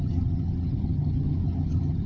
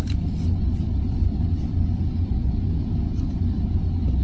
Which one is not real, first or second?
first